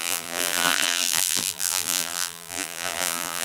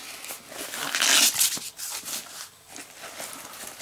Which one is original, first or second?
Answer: second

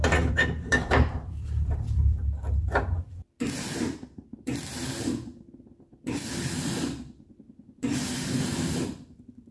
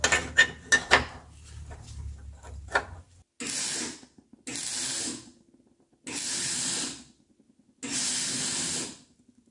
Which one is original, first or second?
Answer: second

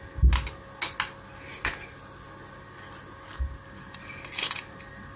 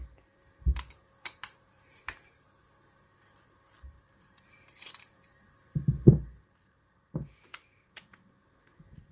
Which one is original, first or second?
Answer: first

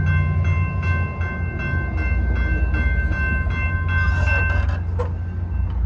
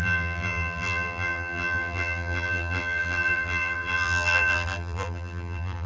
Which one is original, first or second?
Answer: first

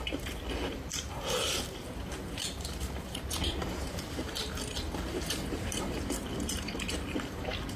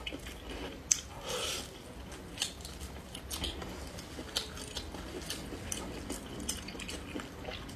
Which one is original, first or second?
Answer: second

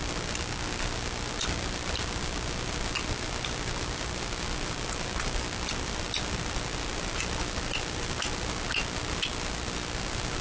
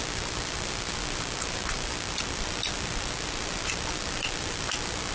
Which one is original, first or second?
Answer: first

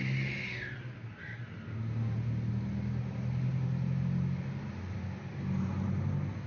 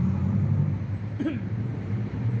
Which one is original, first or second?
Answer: first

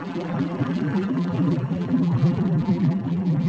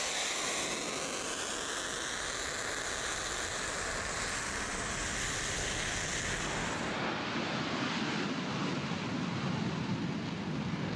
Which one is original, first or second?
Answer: second